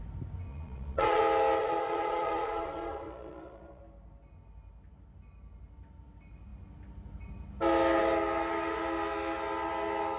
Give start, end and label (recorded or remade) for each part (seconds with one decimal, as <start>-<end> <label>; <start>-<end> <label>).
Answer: 0.0-0.5 recorded; 0.5-1.2 remade; 1.2-1.6 recorded; 1.6-3.8 remade; 3.8-10.2 recorded